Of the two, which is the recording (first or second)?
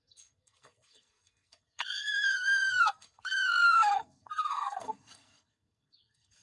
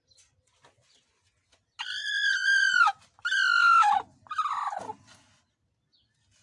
second